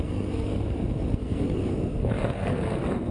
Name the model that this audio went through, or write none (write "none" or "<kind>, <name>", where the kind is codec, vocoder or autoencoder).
codec, SNAC